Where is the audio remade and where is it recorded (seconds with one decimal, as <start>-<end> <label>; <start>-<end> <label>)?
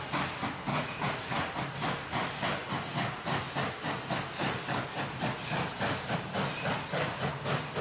0.0-0.7 recorded; 0.7-1.5 remade; 1.5-7.8 recorded